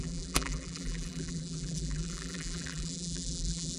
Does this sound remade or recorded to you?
remade